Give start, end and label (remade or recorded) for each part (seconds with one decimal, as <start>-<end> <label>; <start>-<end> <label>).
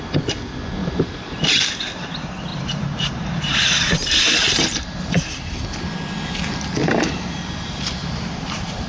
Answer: 0.0-0.8 recorded; 0.8-1.7 remade; 1.7-2.5 recorded; 2.5-4.8 remade; 4.8-6.8 recorded; 6.8-8.9 remade